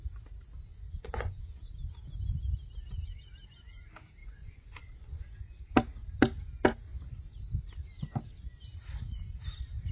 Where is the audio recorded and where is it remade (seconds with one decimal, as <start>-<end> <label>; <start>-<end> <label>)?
0.0-0.7 recorded; 0.7-1.7 remade; 1.7-4.2 recorded; 4.2-5.2 remade; 5.2-9.9 recorded